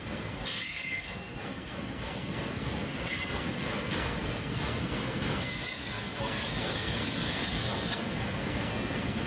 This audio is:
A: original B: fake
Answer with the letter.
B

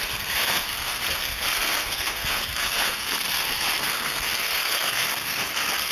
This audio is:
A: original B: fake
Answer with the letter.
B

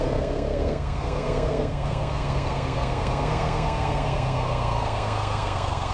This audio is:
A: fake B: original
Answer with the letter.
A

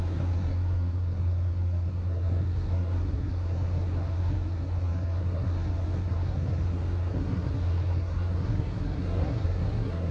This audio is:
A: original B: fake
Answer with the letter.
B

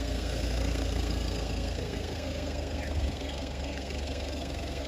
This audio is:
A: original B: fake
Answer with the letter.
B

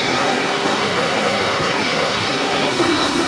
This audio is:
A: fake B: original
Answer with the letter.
A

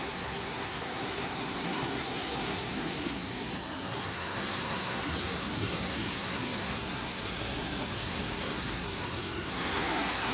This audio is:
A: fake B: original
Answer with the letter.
A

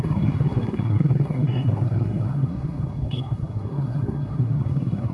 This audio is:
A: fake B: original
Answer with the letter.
A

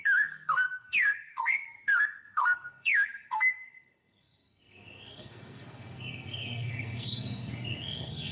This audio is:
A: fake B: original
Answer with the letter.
A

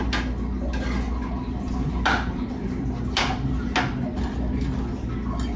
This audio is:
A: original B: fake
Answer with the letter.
A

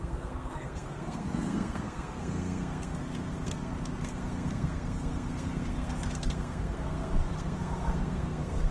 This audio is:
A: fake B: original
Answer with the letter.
A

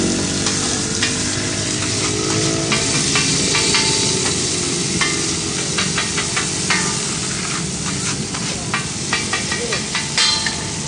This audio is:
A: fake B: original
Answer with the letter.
B